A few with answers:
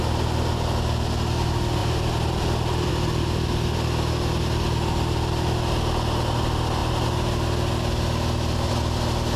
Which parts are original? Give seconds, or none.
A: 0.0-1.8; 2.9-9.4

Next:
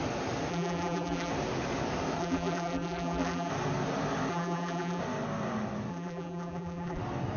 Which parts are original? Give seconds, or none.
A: 0.0-0.5; 1.3-2.2; 3.5-4.3; 5.0-5.9; 7.0-7.4

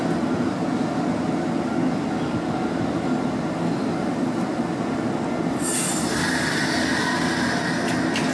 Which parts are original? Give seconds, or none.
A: 0.0-5.7; 6.6-8.3

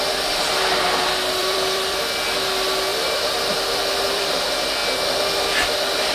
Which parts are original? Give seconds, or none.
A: 0.0-1.4; 2.0-2.9; 4.3-6.1